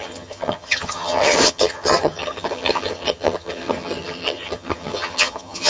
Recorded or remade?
remade